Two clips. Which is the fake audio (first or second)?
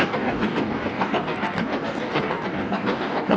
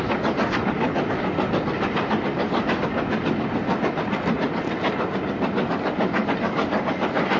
first